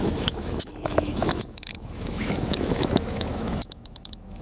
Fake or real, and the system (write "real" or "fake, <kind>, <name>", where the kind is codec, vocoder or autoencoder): fake, autoencoder, DAC-VAE